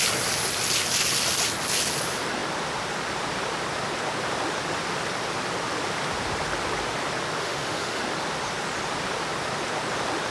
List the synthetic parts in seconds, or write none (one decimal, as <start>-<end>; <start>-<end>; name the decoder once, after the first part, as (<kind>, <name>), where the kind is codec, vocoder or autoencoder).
7.4-8.0 (autoencoder, DAC-VAE)